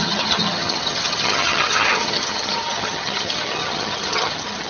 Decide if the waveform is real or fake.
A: fake